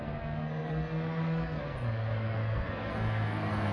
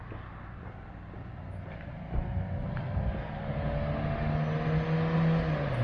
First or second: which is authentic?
second